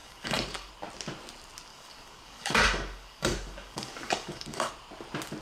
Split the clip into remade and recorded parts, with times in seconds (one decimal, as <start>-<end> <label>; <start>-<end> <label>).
0.0-0.7 remade; 0.7-1.7 recorded; 1.7-4.7 remade; 4.7-5.4 recorded